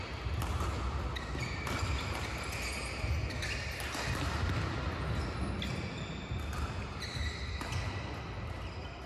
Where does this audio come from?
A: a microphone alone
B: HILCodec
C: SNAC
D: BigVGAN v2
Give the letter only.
A